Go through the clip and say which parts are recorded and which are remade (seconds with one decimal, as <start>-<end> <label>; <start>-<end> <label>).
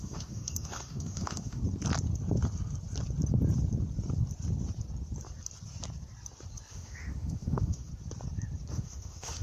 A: 0.0-1.6 remade; 1.6-6.7 recorded; 6.7-7.9 remade; 7.9-8.7 recorded; 8.7-9.4 remade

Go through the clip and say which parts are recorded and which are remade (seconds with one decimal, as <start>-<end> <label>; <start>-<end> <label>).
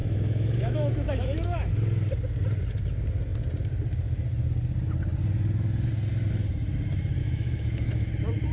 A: 0.0-1.7 remade; 1.7-7.2 recorded; 7.2-8.1 remade; 8.1-8.5 recorded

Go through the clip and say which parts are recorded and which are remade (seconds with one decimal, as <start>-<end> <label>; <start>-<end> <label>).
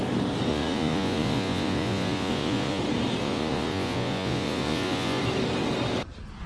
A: 0.0-0.5 recorded; 0.5-2.8 remade; 2.8-3.2 recorded; 3.2-5.2 remade; 5.2-6.5 recorded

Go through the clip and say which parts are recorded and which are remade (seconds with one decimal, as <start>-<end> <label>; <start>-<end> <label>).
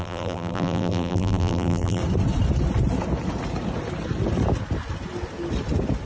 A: 0.0-2.0 remade; 2.0-6.1 recorded